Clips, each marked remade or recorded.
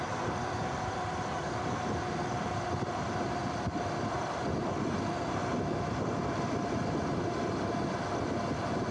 recorded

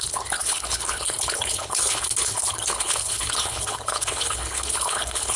remade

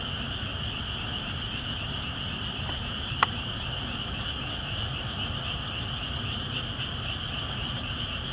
recorded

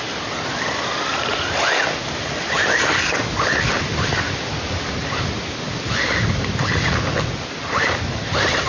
recorded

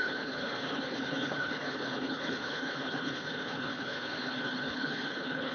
remade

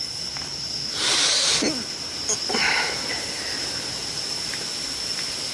recorded